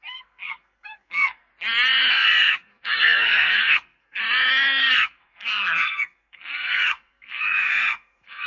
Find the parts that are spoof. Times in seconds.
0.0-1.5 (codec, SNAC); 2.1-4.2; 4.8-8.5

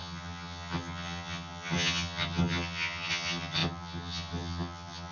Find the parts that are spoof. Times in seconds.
0.0-5.1 (vocoder, HiFi-GAN)

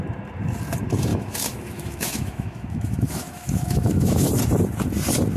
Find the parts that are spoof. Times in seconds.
1.1-4.3 (autoencoder, DAC-VAE)

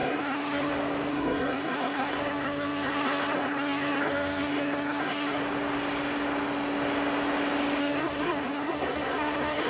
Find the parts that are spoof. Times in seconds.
0.0-0.7 (codec, SNAC); 1.1-5.4; 7.8-9.7

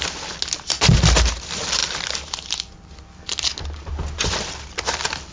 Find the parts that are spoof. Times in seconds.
none

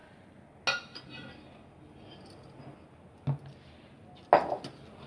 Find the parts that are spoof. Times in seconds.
none

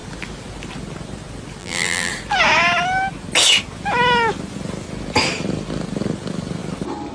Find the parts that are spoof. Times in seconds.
1.6-2.1 (vocoder, BigVGAN v2)

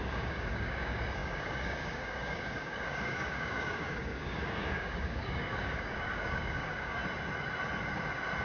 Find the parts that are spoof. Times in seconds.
0.0-7.0 (codec, DAC)